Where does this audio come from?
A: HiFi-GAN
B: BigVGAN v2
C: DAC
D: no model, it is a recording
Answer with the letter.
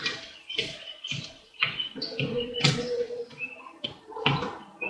B